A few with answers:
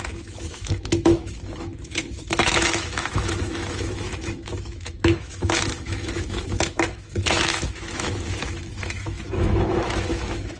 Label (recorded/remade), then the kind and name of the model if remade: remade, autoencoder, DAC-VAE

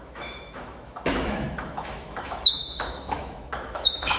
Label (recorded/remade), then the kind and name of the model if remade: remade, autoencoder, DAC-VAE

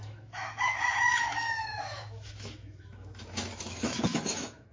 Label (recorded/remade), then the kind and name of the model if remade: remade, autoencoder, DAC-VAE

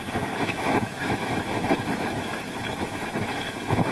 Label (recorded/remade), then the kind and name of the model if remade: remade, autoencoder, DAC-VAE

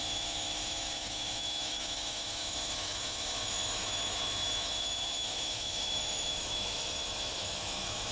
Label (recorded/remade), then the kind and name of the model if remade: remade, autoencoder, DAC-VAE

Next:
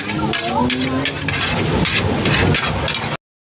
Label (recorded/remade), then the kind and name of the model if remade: recorded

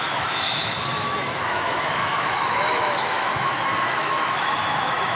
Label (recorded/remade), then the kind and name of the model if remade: remade, autoencoder, DAC-VAE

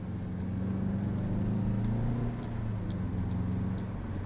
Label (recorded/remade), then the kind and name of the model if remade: recorded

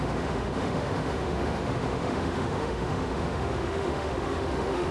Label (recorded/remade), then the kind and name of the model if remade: remade, autoencoder, DAC-VAE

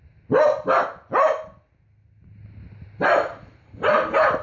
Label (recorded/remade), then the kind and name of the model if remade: recorded